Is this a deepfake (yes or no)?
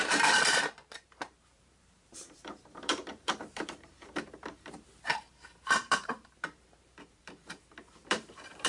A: yes